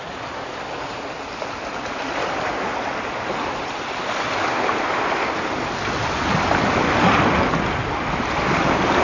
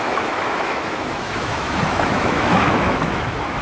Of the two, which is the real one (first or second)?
first